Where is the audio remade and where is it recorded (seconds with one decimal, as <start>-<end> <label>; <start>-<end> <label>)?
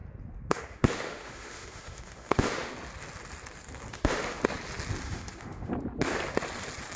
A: 0.0-0.5 recorded; 0.5-2.7 remade; 2.7-3.9 recorded; 3.9-4.4 remade; 4.4-5.0 recorded; 5.0-5.7 remade; 5.7-7.0 recorded